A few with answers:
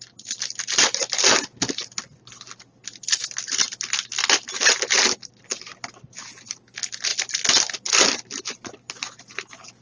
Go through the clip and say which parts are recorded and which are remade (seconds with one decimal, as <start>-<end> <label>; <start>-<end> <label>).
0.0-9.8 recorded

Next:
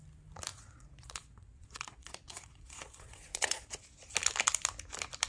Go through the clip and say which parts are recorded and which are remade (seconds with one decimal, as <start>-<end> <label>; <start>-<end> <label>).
0.0-0.5 recorded; 0.5-3.7 remade; 3.7-5.3 recorded

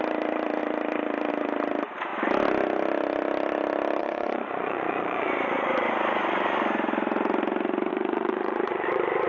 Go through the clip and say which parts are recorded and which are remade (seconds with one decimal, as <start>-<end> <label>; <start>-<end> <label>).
0.0-4.0 recorded; 4.0-5.9 remade; 5.9-7.9 recorded; 7.9-9.3 remade